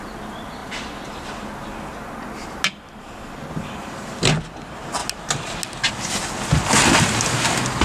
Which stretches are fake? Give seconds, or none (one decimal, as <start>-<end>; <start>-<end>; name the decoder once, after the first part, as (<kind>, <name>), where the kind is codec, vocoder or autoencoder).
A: none